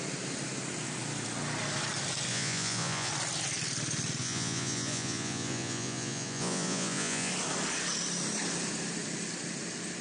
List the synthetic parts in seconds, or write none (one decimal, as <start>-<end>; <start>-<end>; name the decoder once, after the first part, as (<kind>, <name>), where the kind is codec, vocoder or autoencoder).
2.3-3.1 (vocoder, Vocos); 4.2-7.3